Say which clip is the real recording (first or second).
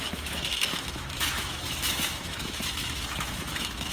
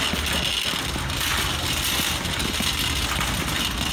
second